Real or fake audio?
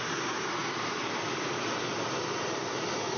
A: real